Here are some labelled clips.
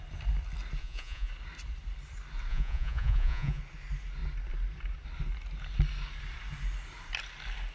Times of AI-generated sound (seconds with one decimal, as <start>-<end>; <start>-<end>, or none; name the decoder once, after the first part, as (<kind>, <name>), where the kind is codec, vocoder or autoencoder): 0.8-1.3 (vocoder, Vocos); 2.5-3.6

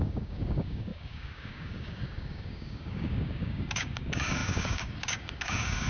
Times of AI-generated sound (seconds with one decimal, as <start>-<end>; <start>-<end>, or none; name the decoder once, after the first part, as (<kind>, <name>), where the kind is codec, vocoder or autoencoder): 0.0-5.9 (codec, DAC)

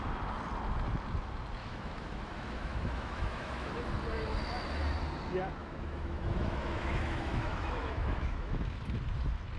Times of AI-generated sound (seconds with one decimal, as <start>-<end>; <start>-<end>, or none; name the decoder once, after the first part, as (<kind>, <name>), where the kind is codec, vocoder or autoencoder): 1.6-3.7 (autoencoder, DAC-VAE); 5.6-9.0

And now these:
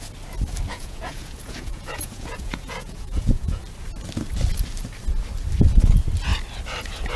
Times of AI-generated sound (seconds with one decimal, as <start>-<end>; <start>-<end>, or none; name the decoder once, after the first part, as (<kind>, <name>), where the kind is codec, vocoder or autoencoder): 0.7-3.6 (vocoder, Vocos)

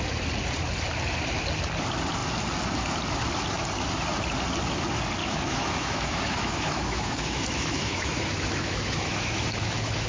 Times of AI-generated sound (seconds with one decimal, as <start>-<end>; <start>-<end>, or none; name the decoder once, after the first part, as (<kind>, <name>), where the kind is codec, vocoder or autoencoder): 5.2-10.1 (autoencoder, DAC-VAE)